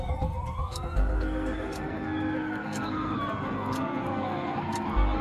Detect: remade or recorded remade